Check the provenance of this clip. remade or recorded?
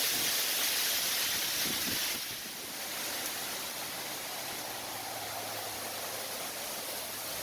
recorded